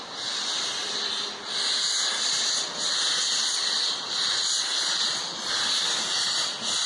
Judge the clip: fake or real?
real